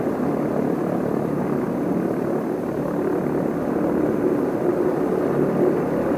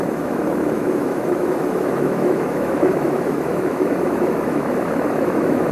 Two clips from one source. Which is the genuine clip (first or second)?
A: first